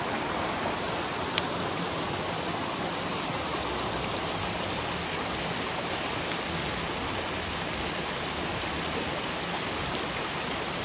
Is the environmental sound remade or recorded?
recorded